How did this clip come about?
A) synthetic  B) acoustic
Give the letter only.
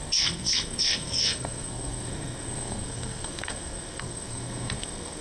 A